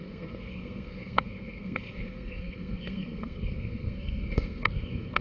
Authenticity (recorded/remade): remade